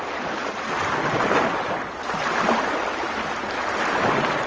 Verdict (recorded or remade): recorded